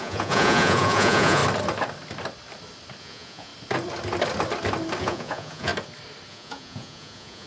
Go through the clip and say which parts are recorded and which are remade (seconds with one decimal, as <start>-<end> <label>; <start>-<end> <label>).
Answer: 0.0-1.4 remade; 1.4-3.0 recorded; 3.0-3.5 remade; 3.5-5.0 recorded; 5.0-5.7 remade; 5.7-6.3 recorded; 6.3-7.5 remade